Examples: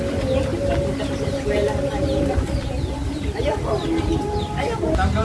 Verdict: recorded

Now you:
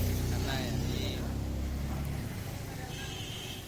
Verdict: recorded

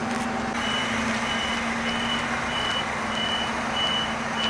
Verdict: recorded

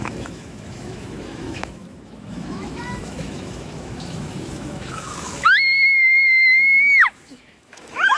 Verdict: remade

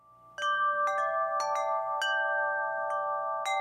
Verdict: recorded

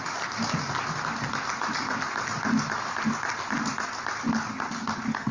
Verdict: recorded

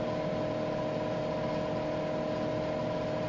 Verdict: recorded